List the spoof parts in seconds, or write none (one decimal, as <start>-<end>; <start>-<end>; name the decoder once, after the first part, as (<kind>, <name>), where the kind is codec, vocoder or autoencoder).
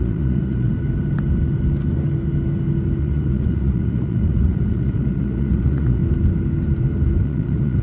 0.0-0.7 (vocoder, Vocos); 3.0-6.0; 7.2-7.8